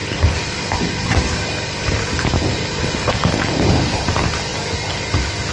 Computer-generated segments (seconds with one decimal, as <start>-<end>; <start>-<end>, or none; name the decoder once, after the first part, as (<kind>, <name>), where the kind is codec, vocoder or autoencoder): none